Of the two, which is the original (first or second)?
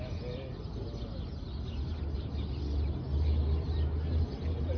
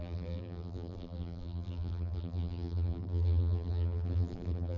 first